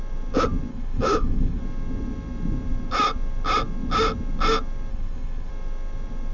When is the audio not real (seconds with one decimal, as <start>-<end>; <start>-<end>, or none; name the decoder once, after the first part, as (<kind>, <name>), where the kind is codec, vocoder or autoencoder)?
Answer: 0.7-1.6 (codec, HILCodec); 4.9-5.5